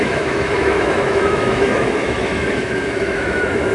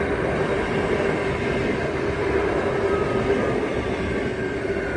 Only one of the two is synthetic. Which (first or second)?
first